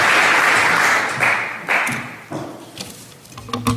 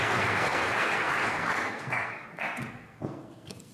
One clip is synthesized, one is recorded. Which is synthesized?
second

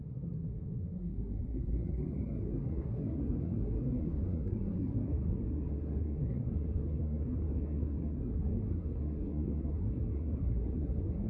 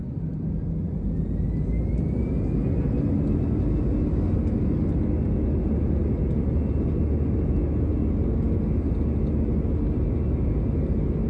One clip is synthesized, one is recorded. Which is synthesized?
first